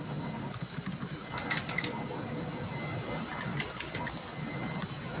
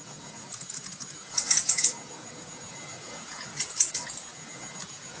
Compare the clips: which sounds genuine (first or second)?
first